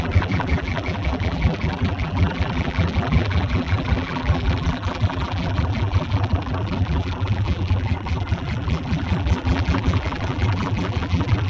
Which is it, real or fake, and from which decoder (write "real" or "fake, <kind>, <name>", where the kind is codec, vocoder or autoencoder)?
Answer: fake, vocoder, BigVGAN v2